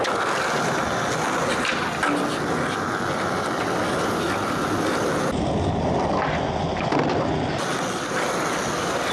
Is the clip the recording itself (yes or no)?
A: yes